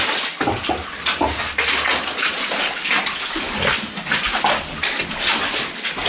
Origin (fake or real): real